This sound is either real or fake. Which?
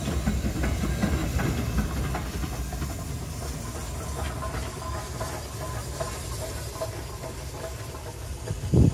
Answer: real